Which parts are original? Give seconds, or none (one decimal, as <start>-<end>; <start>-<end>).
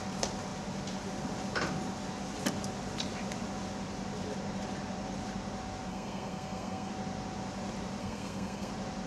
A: 0.0-5.9; 6.9-8.0; 8.7-9.1